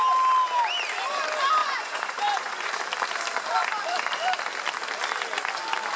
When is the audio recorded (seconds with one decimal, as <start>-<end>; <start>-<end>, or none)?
0.0-1.6; 2.7-6.0